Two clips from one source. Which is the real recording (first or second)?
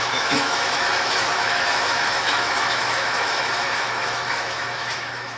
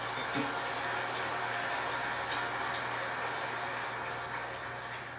second